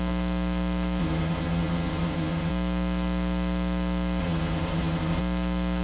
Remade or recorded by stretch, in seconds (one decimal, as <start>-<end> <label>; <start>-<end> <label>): 0.0-1.0 recorded; 1.0-2.5 remade; 2.5-4.2 recorded; 4.2-5.2 remade; 5.2-5.8 recorded